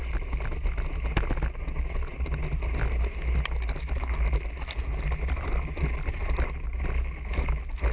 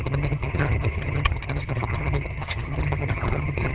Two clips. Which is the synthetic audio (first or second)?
second